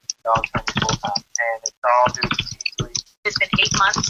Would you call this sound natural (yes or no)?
yes